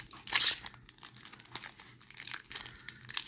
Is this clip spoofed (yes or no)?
no